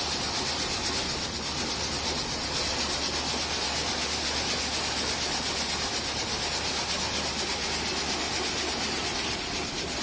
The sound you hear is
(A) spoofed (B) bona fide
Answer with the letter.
B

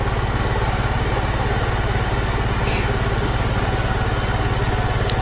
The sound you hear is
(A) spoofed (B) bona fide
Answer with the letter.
B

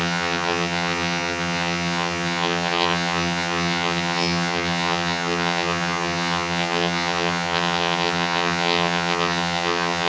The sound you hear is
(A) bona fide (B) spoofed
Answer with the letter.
B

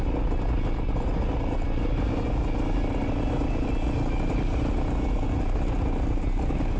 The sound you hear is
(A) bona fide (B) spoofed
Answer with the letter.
A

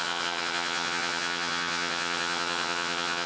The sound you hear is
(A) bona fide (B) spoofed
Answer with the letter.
B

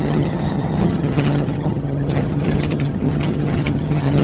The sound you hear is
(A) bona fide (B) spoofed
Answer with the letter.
B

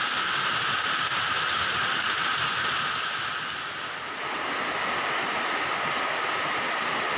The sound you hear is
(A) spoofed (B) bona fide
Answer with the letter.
B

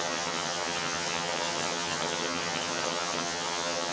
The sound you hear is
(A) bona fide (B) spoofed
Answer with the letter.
B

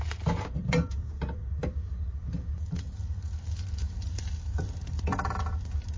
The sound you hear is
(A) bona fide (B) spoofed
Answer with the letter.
A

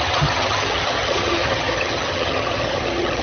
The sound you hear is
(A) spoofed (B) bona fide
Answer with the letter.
A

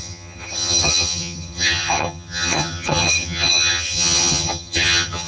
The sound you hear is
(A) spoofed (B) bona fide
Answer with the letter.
A